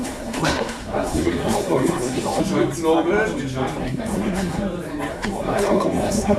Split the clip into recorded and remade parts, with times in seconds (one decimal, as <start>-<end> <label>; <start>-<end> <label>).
0.0-2.4 remade; 2.4-3.8 recorded; 3.8-4.6 remade; 4.6-5.1 recorded; 5.1-6.4 remade